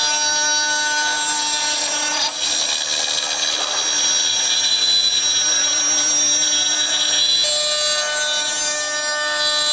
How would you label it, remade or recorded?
recorded